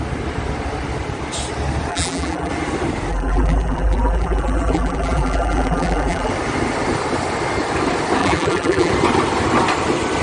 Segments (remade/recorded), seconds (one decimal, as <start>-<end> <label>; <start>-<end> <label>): 0.0-1.9 recorded; 1.9-2.5 remade; 2.5-3.1 recorded; 3.1-6.3 remade; 6.3-8.2 recorded; 8.2-8.9 remade; 8.9-10.2 recorded